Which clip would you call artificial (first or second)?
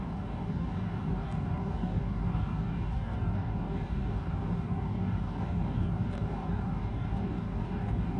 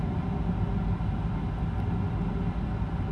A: first